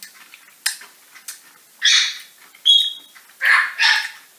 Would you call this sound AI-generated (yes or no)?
no